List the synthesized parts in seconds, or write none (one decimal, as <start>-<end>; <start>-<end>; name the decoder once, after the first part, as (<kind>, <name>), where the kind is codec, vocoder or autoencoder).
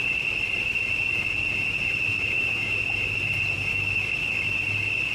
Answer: 2.1-2.8 (autoencoder, DAC-VAE); 3.7-4.6